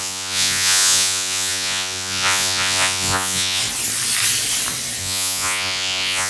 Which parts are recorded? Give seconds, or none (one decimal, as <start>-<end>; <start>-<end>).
3.6-5.0

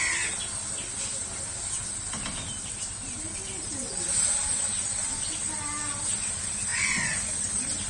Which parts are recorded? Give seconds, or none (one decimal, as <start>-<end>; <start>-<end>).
0.0-6.7; 7.3-7.9